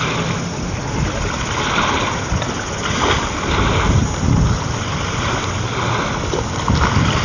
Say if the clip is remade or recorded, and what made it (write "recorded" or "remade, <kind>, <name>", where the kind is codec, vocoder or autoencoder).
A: recorded